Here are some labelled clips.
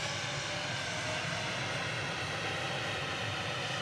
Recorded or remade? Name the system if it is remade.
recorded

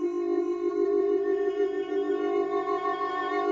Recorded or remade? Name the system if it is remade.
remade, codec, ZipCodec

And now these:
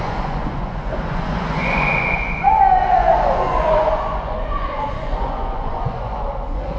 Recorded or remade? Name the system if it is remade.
remade, vocoder, Vocos